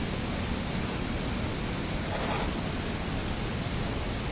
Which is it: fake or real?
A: real